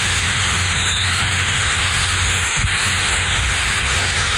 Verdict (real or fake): fake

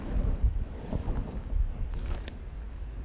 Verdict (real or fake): fake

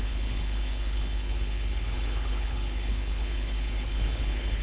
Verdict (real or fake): fake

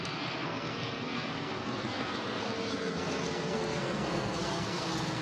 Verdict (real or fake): fake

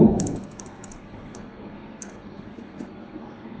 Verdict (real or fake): fake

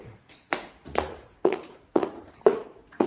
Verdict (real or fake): fake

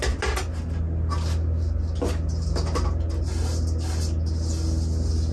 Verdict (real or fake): real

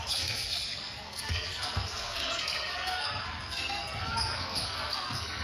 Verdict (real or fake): fake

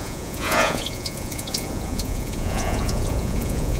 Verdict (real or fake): fake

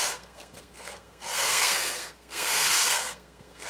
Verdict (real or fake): fake